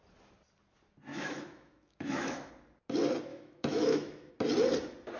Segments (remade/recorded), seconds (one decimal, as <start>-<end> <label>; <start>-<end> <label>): 0.0-1.1 recorded; 1.1-2.5 remade; 2.5-3.3 recorded; 3.3-4.3 remade; 4.3-5.2 recorded

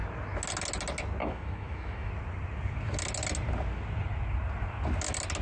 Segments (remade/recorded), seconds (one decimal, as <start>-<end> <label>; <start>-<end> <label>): 0.0-1.2 recorded; 1.2-2.1 remade; 2.1-5.4 recorded

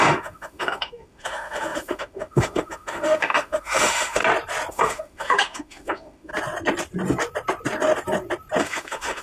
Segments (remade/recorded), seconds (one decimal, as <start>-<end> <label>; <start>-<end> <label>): 0.0-4.2 remade; 4.2-4.7 recorded; 4.7-6.3 remade; 6.3-8.6 recorded; 8.6-9.2 remade

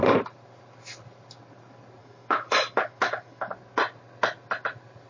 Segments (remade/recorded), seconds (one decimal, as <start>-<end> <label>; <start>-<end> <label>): 0.0-2.0 recorded; 2.0-3.5 remade; 3.5-5.1 recorded

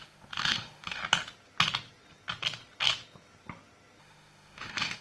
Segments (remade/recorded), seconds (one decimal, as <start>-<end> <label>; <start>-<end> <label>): 0.0-1.0 remade; 1.0-4.0 recorded; 4.0-5.0 remade

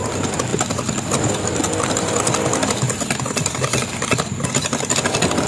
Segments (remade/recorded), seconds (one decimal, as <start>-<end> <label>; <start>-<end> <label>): 0.0-5.5 recorded

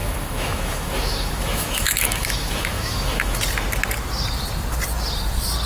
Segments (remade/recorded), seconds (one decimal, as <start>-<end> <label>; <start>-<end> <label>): 0.0-3.4 remade; 3.4-5.7 recorded